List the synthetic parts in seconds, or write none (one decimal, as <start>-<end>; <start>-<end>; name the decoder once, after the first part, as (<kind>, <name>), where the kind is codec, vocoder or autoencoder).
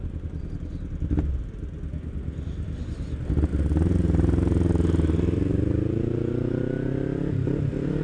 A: none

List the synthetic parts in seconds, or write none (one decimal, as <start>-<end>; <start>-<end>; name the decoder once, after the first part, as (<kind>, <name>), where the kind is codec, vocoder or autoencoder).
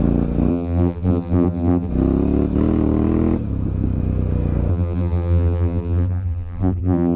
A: 0.5-1.9 (vocoder, BigVGAN v2); 4.7-7.2